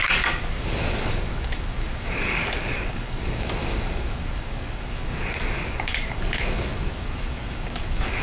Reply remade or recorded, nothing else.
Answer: remade